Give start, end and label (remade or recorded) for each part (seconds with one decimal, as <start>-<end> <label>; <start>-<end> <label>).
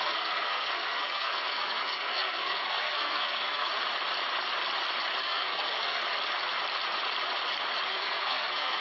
0.0-3.7 remade; 3.7-5.2 recorded; 5.2-6.0 remade; 6.0-7.9 recorded; 7.9-8.8 remade